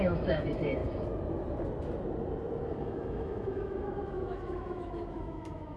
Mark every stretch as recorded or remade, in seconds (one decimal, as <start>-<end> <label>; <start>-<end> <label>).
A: 0.0-0.8 remade; 0.8-2.8 recorded; 2.8-5.8 remade